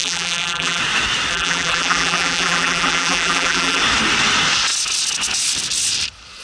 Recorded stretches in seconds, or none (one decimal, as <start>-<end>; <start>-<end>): 0.8-1.3; 3.8-6.4